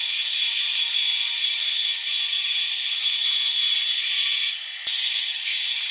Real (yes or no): no